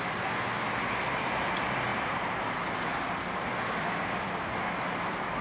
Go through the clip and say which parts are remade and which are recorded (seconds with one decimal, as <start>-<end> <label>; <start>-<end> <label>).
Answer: 0.0-5.4 recorded